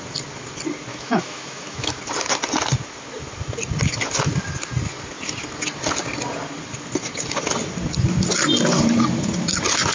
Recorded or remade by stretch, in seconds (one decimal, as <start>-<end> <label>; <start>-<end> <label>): 0.0-0.9 recorded; 0.9-2.0 remade; 2.0-9.9 recorded